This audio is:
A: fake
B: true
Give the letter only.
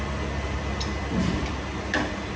B